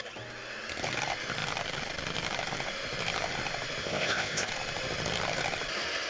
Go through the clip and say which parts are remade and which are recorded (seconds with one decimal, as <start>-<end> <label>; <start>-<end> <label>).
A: 0.0-3.8 recorded; 3.8-4.5 remade; 4.5-6.1 recorded